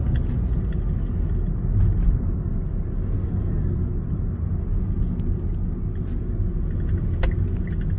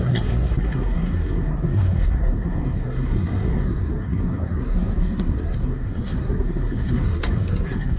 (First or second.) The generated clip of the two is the second